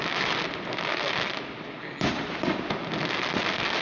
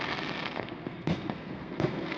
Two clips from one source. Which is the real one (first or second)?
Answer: first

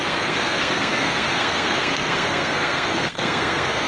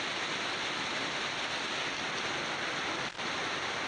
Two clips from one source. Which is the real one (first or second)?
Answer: second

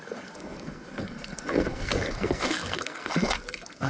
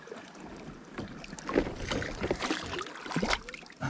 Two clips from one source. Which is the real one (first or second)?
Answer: second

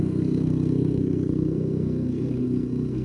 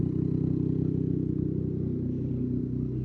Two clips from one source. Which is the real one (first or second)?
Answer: second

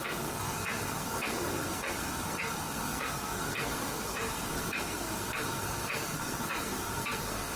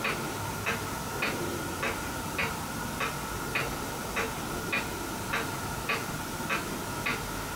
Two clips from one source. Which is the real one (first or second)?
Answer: second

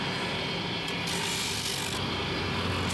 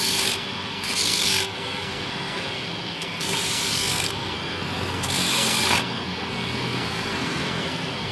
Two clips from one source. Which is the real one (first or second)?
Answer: first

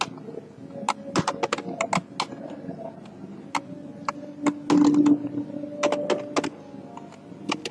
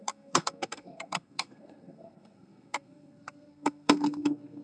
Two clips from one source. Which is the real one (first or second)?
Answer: first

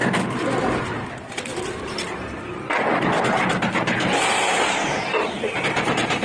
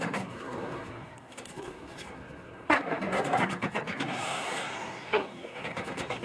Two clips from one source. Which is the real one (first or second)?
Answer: first